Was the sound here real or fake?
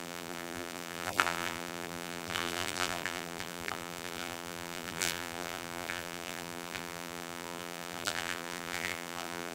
fake